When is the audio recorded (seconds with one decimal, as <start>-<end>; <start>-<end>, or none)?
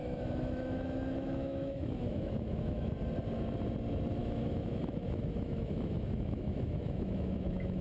2.9-4.2